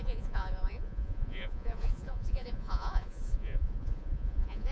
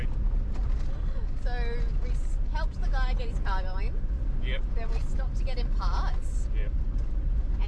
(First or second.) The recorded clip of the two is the second